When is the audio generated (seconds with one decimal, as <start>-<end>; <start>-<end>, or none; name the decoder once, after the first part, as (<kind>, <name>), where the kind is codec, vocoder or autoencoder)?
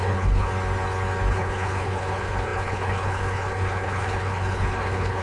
0.0-0.5 (codec, HILCodec); 1.3-5.2